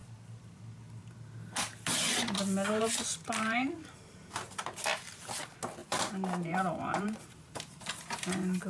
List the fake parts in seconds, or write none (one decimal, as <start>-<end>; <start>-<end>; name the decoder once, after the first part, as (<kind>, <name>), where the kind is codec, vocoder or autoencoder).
2.8-4.5 (vocoder, BigVGAN v2); 5.8-7.9